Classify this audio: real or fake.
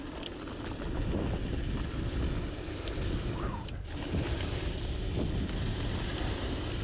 real